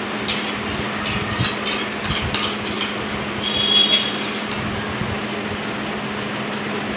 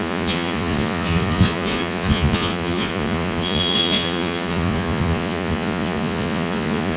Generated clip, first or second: second